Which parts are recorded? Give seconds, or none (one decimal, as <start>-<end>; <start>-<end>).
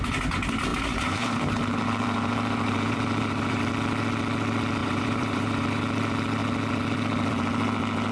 0.0-0.7; 3.6-4.8; 5.8-8.1